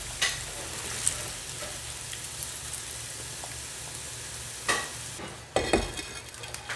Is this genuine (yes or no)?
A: yes